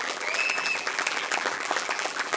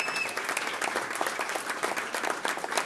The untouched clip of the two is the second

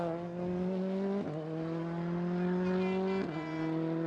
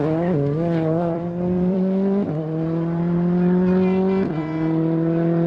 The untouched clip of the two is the first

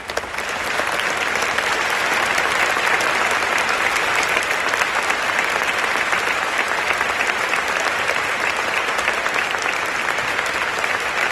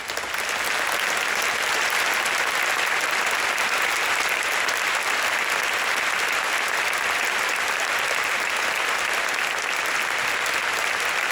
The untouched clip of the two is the second